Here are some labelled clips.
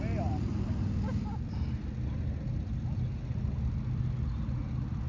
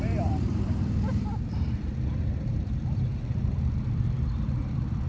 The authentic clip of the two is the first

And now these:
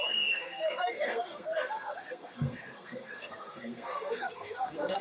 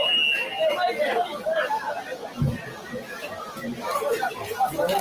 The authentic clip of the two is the second